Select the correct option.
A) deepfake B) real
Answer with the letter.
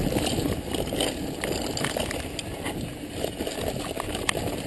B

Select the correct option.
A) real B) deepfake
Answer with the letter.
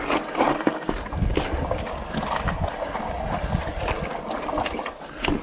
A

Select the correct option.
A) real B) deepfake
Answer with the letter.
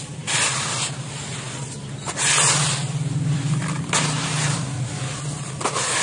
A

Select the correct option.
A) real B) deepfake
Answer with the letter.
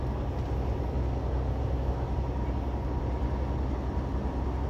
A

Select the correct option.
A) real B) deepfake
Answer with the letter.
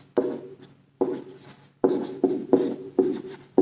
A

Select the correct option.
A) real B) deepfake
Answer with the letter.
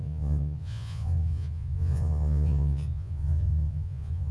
B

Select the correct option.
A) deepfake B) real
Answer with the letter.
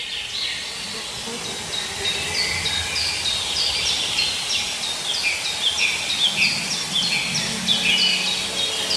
B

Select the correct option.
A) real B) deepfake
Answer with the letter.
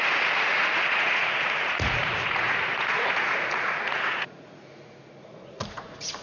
B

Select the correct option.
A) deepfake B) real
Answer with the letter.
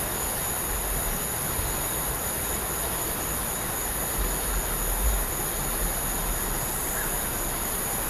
B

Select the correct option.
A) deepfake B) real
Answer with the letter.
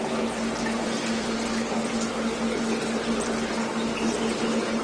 B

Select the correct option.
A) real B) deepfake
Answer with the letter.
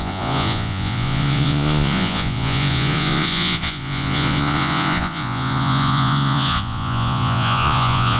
B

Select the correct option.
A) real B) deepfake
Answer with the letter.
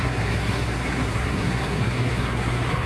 B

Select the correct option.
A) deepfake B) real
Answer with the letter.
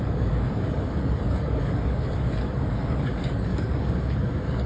A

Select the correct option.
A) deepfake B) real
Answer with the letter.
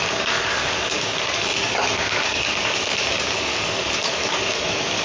A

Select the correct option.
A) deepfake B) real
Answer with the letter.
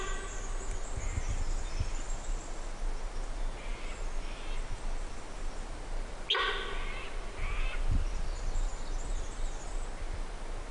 B